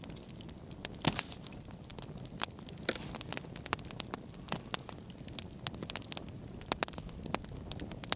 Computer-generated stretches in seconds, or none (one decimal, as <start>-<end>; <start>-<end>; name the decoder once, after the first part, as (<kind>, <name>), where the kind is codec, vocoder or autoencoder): none